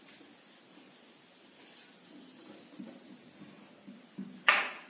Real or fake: real